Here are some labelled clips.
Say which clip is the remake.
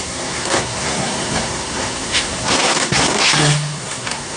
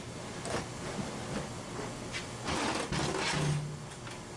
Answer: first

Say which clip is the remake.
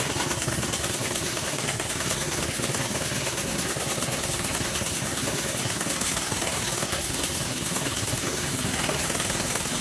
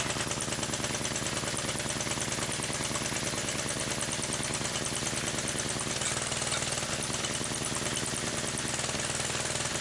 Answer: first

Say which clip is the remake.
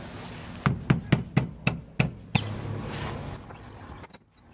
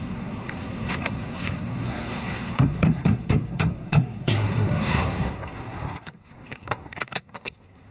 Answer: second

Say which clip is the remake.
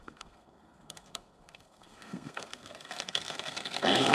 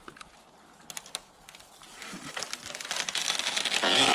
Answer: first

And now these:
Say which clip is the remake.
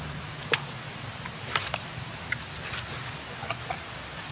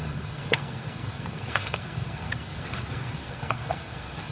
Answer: second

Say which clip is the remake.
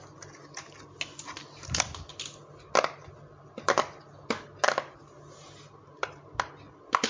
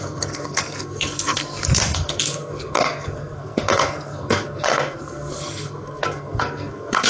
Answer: second